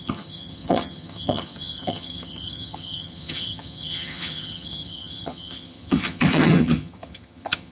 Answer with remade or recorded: remade